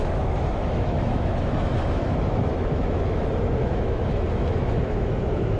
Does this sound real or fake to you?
fake